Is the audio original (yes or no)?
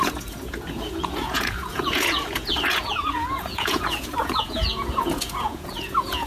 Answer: no